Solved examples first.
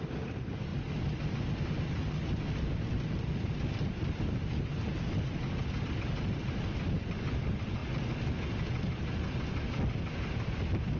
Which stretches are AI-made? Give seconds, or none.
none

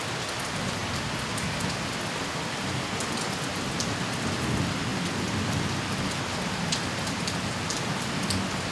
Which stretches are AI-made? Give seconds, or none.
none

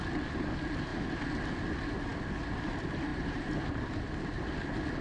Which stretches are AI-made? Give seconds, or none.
3.1-3.8 (vocoder, BigVGAN v2)

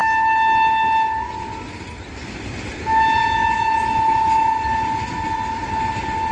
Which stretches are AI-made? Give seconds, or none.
none

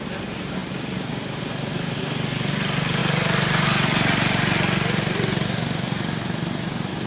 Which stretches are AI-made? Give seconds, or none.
none